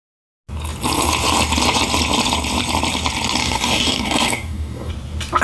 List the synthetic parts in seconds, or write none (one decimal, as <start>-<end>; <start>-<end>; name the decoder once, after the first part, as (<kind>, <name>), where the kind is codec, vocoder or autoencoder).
3.4-4.9 (codec, DAC)